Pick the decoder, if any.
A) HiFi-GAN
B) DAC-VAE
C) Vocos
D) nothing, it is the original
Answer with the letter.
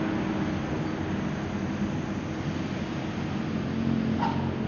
D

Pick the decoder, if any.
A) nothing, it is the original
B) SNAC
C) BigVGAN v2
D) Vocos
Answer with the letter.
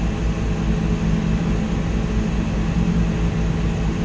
A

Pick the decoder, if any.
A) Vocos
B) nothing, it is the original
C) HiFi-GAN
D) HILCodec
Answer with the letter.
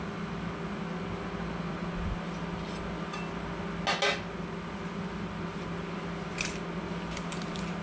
B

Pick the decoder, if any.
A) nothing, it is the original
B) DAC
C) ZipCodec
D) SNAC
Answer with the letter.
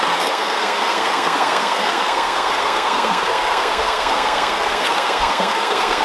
D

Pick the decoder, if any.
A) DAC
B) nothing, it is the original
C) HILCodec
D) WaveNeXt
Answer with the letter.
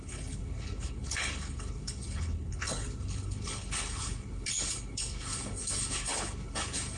C